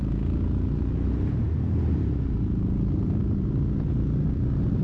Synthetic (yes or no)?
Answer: no